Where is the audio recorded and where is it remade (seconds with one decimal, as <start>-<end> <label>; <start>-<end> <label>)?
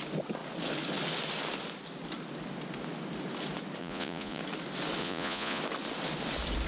0.0-3.8 recorded; 3.8-4.4 remade; 4.4-5.0 recorded; 5.0-5.6 remade; 5.6-6.7 recorded